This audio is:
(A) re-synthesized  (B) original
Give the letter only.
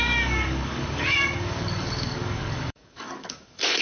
A